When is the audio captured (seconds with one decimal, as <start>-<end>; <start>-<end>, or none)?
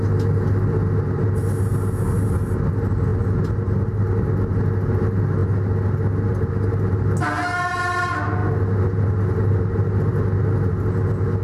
0.0-11.4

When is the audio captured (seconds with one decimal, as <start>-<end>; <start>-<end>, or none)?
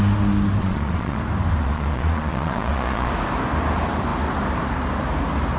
0.0-0.6; 1.2-1.6; 3.1-5.6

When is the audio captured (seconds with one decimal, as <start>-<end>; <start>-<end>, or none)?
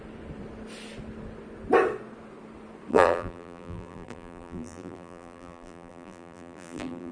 0.0-2.9